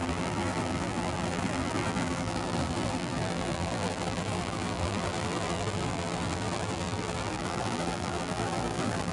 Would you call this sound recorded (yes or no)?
no